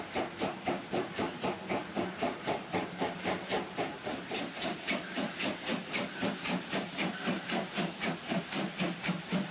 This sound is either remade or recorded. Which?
remade